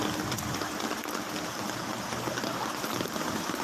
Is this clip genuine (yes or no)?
yes